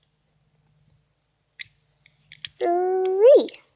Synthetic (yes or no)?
no